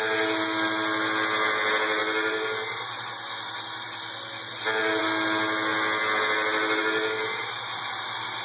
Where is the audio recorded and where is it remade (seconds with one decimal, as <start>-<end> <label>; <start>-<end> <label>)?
0.0-8.4 recorded